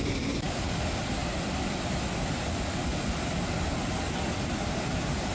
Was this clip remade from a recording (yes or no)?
no